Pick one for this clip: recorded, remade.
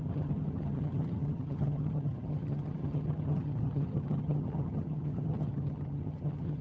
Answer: remade